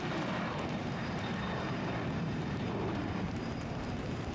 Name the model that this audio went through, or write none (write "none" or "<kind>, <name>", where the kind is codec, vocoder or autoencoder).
vocoder, BigVGAN v2